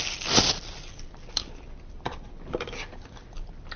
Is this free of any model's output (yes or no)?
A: yes